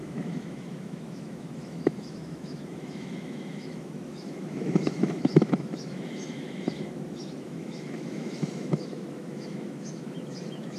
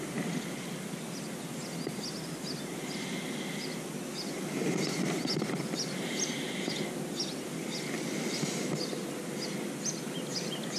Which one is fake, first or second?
first